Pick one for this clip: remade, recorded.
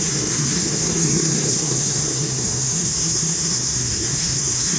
remade